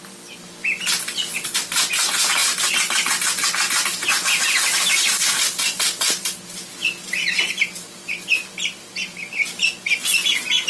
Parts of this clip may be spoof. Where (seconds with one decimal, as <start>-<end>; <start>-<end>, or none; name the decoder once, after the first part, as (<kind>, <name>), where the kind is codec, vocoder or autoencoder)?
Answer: none